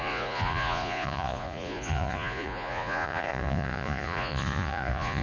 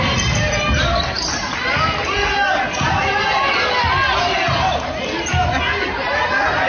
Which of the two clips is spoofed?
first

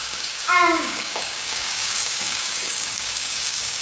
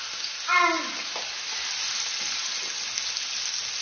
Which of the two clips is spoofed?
first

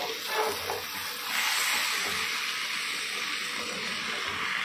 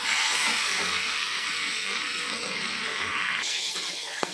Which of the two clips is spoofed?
second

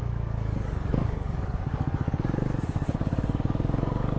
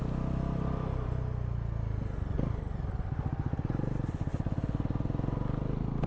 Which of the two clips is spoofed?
first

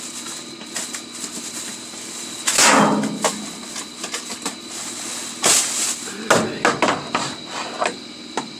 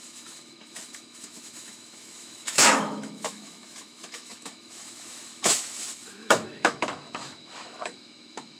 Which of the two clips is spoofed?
second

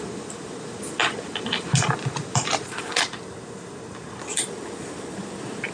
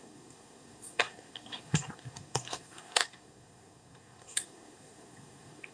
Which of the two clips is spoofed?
second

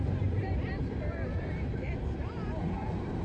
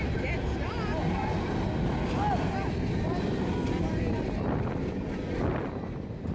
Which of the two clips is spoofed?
first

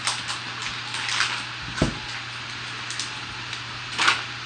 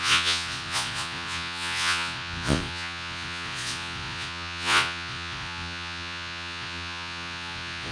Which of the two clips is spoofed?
second